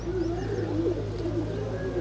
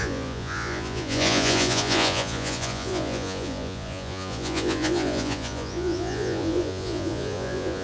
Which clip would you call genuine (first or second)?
first